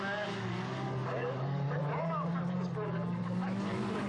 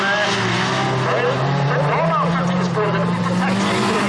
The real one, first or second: second